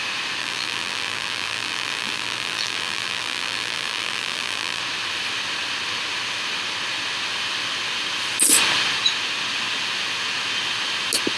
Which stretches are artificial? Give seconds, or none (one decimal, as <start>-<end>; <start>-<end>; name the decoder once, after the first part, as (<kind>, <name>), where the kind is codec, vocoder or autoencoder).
0.4-4.8 (vocoder, BigVGAN v2)